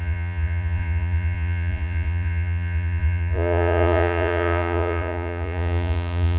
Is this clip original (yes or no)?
no